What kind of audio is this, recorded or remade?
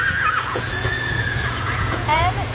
remade